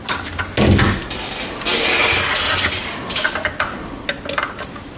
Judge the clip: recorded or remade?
recorded